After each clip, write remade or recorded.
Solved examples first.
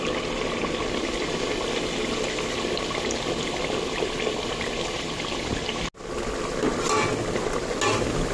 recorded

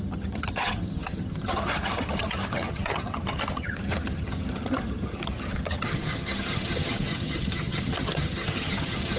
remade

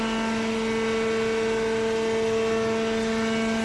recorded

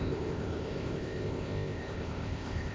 remade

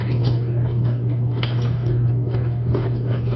remade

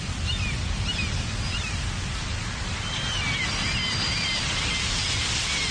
recorded